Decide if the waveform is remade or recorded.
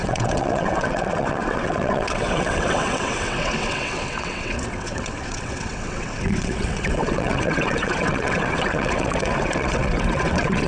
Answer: remade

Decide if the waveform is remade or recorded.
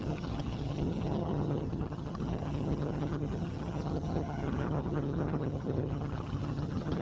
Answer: remade